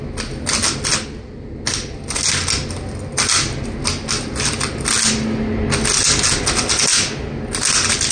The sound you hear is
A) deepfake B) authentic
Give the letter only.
B